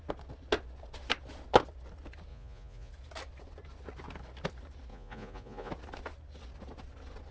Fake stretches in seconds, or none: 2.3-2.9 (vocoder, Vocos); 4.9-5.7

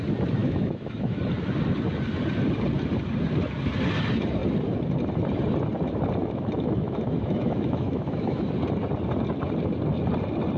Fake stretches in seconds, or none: 0.4-1.2 (autoencoder, DAC-VAE); 6.2-8.5

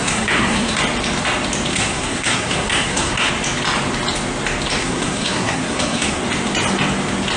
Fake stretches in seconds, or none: 0.0-0.8 (codec, SNAC); 1.7-3.3; 4.8-6.2